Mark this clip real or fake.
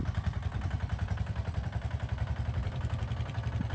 fake